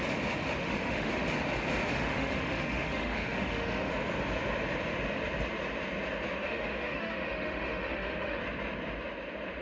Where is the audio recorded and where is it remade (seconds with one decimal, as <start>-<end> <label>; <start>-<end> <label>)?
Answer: 0.0-0.6 recorded; 0.6-1.1 remade; 1.1-1.9 recorded; 1.9-3.9 remade; 3.9-6.4 recorded; 6.4-8.4 remade; 8.4-9.6 recorded